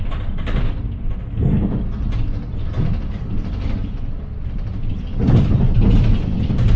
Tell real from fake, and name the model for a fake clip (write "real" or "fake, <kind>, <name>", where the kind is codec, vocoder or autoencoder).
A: real